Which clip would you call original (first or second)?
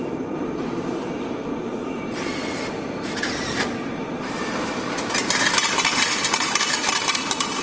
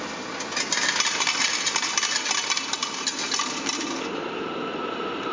second